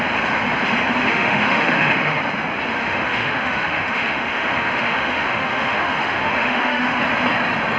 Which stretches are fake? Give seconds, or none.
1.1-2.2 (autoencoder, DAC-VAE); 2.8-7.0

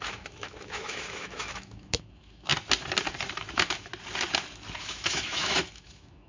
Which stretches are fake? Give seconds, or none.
0.0-2.5 (autoencoder, DAC-VAE); 3.5-3.9; 4.8-6.3

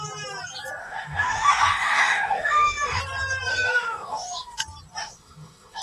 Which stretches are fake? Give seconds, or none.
0.8-3.0 (autoencoder, DAC-VAE); 3.5-4.6; 5.0-5.8

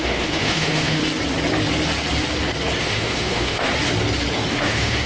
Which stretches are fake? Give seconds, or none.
0.0-1.0 (autoencoder, DAC-VAE); 2.8-3.7; 4.5-5.1

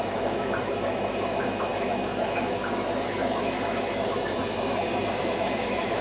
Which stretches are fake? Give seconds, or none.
0.0-6.0 (autoencoder, DAC-VAE)